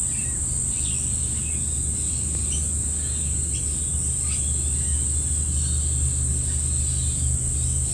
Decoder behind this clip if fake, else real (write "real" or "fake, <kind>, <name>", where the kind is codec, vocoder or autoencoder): real